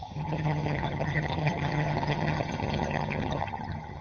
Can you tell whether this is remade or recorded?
remade